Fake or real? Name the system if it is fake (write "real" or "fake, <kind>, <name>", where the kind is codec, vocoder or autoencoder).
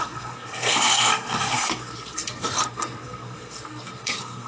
fake, codec, SNAC